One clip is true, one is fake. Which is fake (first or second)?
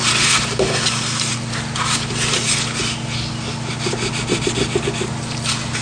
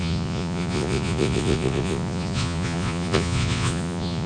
second